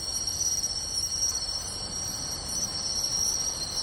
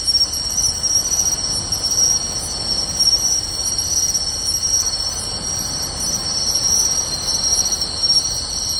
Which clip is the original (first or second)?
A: second